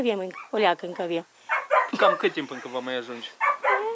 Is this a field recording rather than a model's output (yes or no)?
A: yes